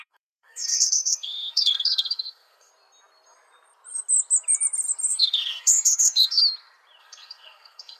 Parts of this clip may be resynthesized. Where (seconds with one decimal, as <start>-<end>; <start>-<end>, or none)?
0.0-2.7; 5.1-6.4; 7.0-8.0